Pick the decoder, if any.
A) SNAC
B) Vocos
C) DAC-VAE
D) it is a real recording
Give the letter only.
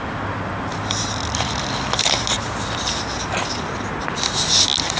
D